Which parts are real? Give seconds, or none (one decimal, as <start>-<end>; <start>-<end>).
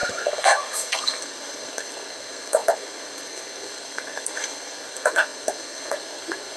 none